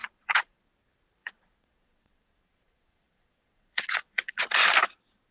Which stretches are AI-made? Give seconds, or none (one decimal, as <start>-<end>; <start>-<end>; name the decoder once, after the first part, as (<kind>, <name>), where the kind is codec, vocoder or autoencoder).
0.0-0.6 (vocoder, Vocos); 1.2-4.4